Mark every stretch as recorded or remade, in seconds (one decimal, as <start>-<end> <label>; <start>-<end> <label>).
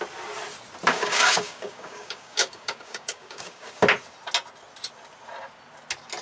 0.0-0.9 recorded; 0.9-3.8 remade; 3.8-6.2 recorded